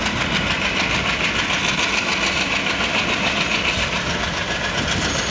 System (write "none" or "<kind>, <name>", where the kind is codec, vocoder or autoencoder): none